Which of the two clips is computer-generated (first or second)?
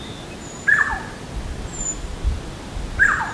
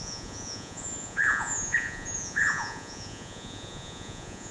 second